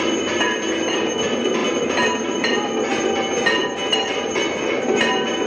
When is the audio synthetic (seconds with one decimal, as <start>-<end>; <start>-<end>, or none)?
none